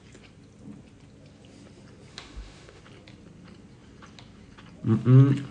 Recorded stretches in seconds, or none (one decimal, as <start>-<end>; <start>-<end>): 0.0-2.1; 2.8-5.5